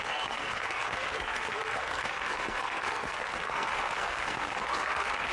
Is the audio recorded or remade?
remade